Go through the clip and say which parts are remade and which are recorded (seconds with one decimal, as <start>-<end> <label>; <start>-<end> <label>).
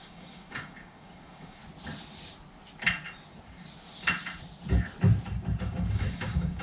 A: 0.0-1.6 remade; 1.6-5.6 recorded; 5.6-6.6 remade